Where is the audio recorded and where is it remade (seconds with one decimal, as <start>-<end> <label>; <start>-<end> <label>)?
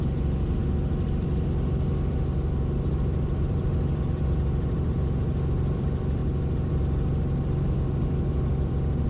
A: 0.0-0.6 remade; 0.6-2.9 recorded; 2.9-6.2 remade; 6.2-6.7 recorded; 6.7-9.1 remade